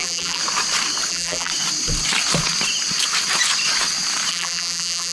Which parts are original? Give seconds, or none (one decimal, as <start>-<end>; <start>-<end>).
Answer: 0.4-1.1; 1.5-4.3